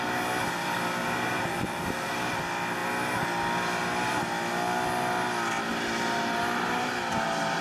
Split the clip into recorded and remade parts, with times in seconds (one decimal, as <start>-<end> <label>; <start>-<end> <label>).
0.0-1.0 recorded; 1.0-2.4 remade; 2.4-7.6 recorded